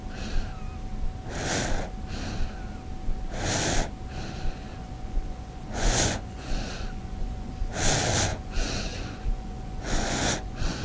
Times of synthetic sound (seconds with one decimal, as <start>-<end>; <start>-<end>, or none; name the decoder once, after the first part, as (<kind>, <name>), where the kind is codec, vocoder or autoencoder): 4.8-7.5 (vocoder, Vocos); 8.3-10.8